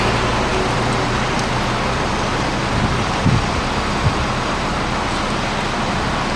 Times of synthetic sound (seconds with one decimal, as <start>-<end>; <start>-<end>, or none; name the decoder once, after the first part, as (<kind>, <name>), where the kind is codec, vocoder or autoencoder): none